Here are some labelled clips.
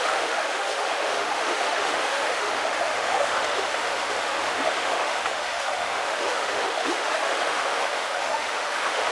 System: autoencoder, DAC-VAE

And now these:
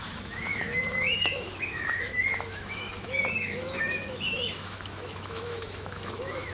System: autoencoder, DAC-VAE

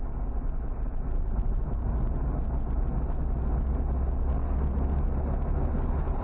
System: none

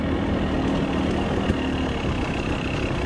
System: none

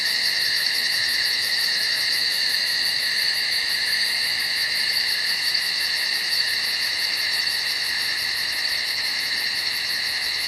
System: autoencoder, DAC-VAE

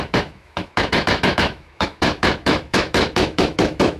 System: autoencoder, DAC-VAE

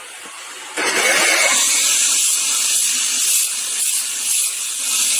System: none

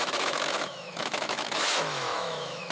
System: autoencoder, DAC-VAE